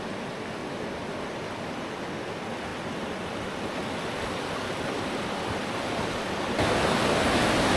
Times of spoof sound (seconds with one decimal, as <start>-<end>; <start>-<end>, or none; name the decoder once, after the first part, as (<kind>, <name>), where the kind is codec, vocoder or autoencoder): 0.6-1.5 (vocoder, BigVGAN v2); 2.7-4.8